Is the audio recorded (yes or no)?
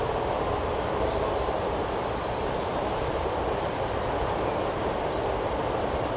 yes